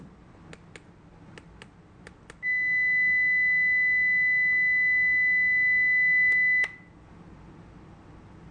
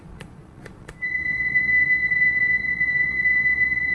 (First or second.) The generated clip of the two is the second